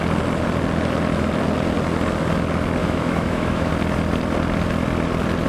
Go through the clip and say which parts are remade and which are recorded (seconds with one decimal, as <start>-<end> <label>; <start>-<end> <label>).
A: 0.0-2.8 recorded; 2.8-3.7 remade; 3.7-5.5 recorded

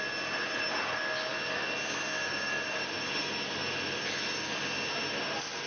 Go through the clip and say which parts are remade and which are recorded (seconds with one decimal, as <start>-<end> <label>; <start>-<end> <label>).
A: 0.0-5.7 recorded

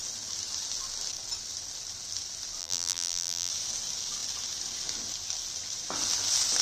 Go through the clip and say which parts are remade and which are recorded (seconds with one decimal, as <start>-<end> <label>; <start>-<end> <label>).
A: 0.0-2.6 recorded; 2.6-3.5 remade; 3.5-6.6 recorded

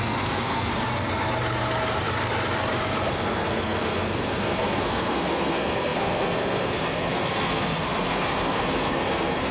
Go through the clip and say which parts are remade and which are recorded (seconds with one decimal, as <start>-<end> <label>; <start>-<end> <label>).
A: 0.0-0.7 remade; 0.7-3.1 recorded; 3.1-9.5 remade

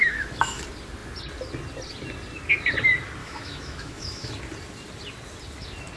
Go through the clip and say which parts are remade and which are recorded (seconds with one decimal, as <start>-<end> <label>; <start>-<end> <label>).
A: 0.0-0.6 remade; 0.6-3.2 recorded; 3.2-4.3 remade; 4.3-6.0 recorded